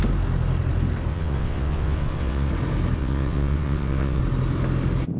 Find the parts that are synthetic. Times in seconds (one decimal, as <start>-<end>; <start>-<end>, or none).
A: 1.1-2.5; 3.0-4.2